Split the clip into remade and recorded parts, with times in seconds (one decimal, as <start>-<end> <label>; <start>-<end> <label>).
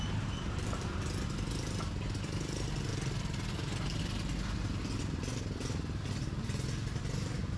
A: 0.0-7.6 recorded